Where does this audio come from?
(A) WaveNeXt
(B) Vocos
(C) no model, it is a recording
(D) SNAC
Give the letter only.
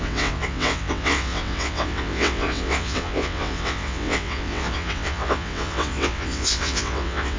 A